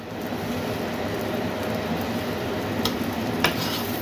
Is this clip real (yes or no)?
no